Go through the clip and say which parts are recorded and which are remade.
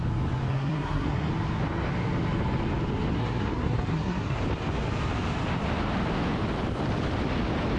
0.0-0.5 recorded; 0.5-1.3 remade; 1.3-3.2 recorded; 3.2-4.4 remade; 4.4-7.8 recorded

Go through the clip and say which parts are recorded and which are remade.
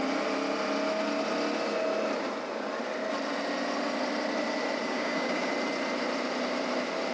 0.0-4.8 recorded; 4.8-5.5 remade; 5.5-7.1 recorded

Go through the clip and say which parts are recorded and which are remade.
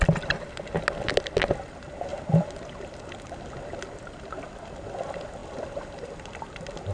0.0-2.1 recorded; 2.1-4.2 remade; 4.2-5.4 recorded; 5.4-6.3 remade; 6.3-6.9 recorded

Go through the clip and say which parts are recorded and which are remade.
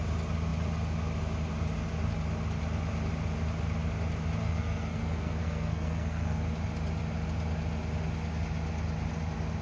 0.0-4.4 recorded; 4.4-6.4 remade; 6.4-9.6 recorded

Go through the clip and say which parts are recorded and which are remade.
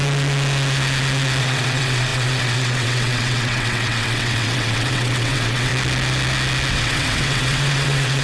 0.0-1.4 recorded; 1.4-5.7 remade; 5.7-6.7 recorded; 6.7-8.2 remade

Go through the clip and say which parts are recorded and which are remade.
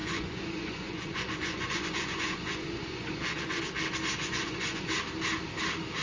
0.0-3.6 remade; 3.6-4.2 recorded; 4.2-4.9 remade; 4.9-6.0 recorded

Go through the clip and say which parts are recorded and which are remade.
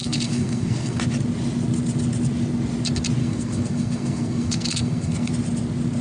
0.0-1.0 remade; 1.0-3.2 recorded; 3.2-5.3 remade; 5.3-6.0 recorded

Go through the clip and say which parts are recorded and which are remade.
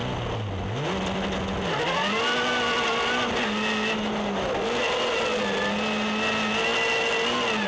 0.0-7.7 recorded